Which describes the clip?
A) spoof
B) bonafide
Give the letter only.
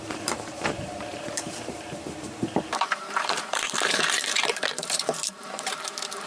A